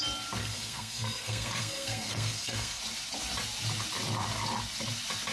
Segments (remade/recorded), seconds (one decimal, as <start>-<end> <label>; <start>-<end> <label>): 0.0-0.4 recorded; 0.4-2.8 remade; 2.8-5.3 recorded